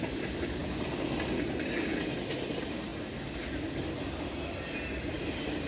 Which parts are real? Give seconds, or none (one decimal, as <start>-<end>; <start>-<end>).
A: 0.0-5.7